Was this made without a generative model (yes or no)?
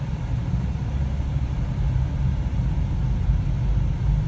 yes